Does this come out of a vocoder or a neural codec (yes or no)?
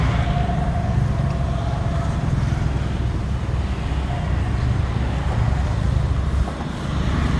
no